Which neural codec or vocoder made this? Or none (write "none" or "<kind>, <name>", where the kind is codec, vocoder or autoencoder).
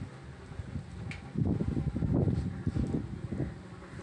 none